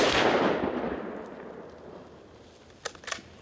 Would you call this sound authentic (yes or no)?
yes